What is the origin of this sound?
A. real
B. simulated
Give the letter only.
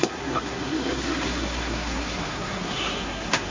B